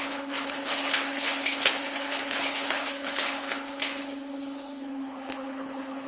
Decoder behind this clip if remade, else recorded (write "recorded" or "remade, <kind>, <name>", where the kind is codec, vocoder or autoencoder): remade, codec, HILCodec